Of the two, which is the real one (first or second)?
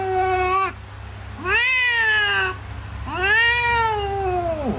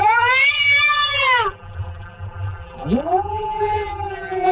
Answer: first